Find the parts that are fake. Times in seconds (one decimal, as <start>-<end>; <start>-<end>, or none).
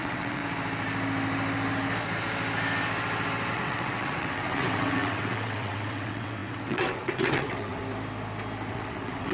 0.0-0.4; 3.5-7.8; 8.7-9.3